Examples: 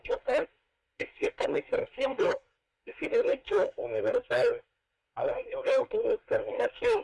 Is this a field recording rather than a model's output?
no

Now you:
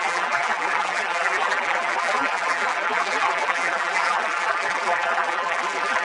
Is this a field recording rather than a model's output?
no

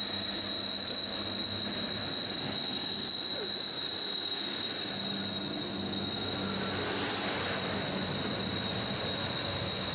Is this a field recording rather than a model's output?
yes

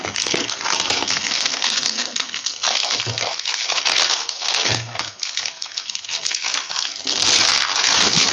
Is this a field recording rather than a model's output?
no